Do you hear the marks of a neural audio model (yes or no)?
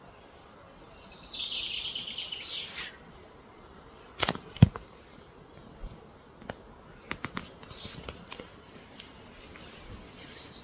no